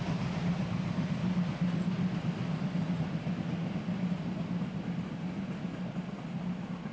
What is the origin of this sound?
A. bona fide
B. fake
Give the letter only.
A